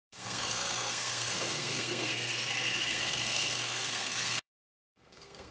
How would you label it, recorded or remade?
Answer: remade